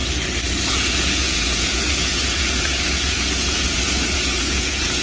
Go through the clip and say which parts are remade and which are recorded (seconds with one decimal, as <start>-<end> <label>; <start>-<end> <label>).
0.0-0.7 recorded; 0.7-5.0 remade